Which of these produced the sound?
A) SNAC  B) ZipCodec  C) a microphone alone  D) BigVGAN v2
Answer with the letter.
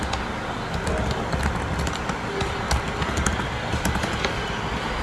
C